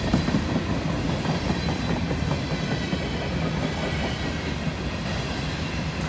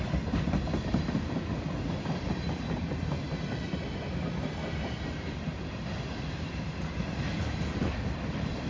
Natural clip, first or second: first